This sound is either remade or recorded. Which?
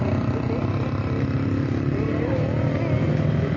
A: recorded